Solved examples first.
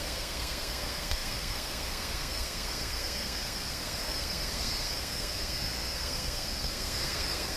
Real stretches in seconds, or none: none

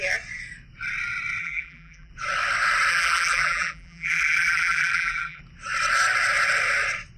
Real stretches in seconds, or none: 0.0-1.4; 2.1-2.9; 5.4-7.2

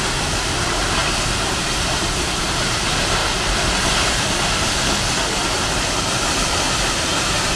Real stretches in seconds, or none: 0.0-1.0; 2.4-3.2; 4.8-7.6